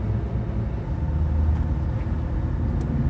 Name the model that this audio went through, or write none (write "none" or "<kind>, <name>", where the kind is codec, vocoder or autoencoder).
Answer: none